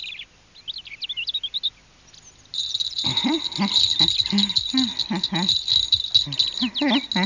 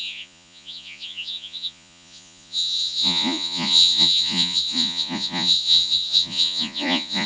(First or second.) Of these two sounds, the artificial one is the second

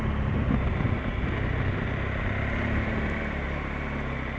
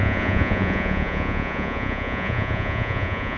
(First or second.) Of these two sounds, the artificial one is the second